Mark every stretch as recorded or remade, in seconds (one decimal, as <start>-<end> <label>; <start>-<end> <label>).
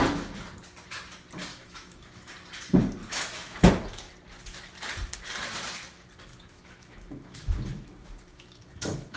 0.0-1.5 recorded; 1.5-2.3 remade; 2.3-3.0 recorded; 3.0-3.7 remade; 3.7-6.3 recorded; 6.3-9.2 remade